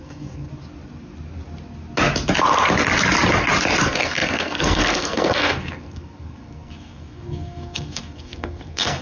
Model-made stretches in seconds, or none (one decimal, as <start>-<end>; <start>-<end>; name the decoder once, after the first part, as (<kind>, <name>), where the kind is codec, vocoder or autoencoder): 0.0-0.5 (codec, SNAC); 3.8-9.0